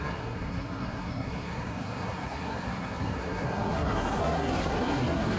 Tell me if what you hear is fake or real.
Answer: fake